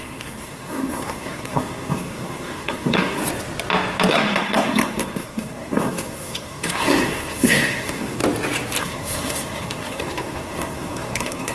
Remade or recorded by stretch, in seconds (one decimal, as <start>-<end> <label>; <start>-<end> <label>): 0.0-3.2 remade; 3.2-4.1 recorded; 4.1-8.2 remade; 8.2-8.8 recorded; 8.8-11.5 remade